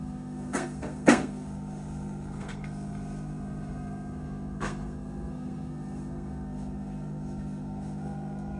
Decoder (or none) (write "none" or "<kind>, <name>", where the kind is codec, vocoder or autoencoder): codec, SNAC